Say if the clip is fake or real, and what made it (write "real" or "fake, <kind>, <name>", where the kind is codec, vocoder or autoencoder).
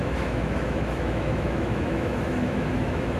fake, autoencoder, DAC-VAE